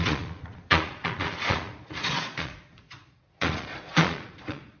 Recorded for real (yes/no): no